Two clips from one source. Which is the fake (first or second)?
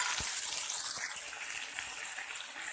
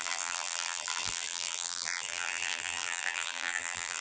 second